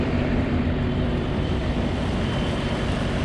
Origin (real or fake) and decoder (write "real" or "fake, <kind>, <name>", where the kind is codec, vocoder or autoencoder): fake, vocoder, BigVGAN v2